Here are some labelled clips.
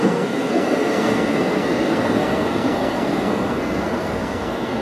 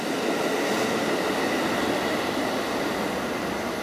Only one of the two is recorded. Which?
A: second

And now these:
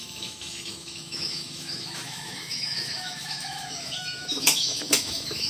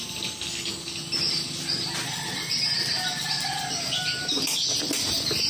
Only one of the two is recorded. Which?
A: second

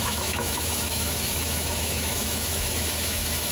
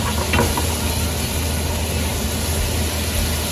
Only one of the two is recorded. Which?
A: second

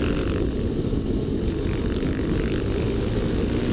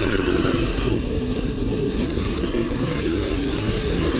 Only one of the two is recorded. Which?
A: first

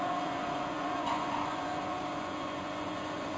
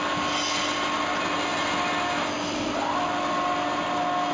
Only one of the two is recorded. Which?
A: second